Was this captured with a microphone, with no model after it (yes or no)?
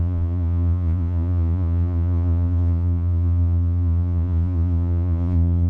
no